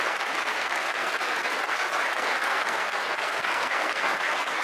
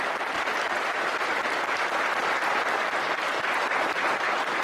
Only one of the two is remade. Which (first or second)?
first